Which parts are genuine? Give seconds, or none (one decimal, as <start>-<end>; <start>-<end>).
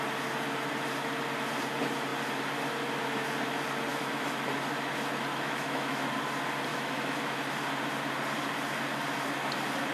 0.0-3.9; 4.5-5.3; 6.1-6.7; 7.4-9.9